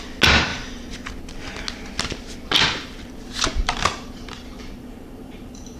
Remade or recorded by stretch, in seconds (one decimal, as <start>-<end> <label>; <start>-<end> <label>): 0.0-3.6 recorded; 3.6-5.8 remade